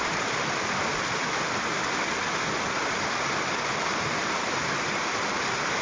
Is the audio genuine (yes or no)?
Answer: yes